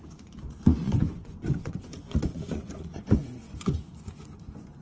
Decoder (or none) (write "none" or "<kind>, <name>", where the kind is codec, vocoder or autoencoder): vocoder, Vocos